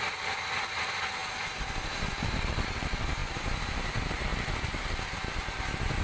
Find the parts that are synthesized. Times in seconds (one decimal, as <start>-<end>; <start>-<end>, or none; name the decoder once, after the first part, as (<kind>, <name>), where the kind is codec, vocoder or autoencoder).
none